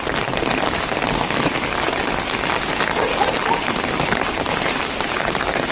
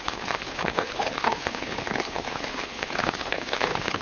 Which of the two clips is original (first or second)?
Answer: first